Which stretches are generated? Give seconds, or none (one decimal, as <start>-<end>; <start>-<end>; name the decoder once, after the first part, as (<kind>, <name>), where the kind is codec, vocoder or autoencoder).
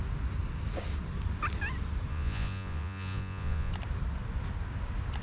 2.1-3.7 (vocoder, Vocos)